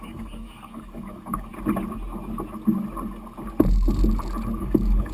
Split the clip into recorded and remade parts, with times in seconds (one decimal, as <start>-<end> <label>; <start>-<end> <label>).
0.0-1.5 remade; 1.5-4.6 recorded; 4.6-5.1 remade